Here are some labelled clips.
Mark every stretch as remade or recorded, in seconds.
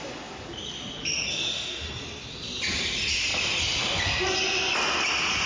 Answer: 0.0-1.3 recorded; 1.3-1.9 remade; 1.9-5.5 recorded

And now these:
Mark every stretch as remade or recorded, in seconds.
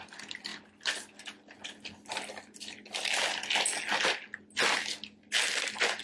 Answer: 0.0-6.0 recorded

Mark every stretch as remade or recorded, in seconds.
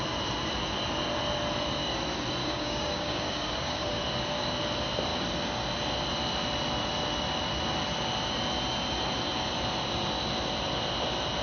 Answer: 0.0-2.4 recorded; 2.4-4.0 remade; 4.0-11.4 recorded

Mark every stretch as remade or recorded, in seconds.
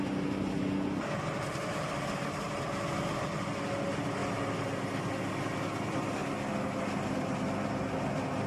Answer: 0.0-8.5 recorded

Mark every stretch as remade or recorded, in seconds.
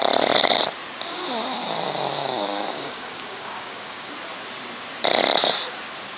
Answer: 0.0-2.2 recorded; 2.2-4.1 remade; 4.1-6.2 recorded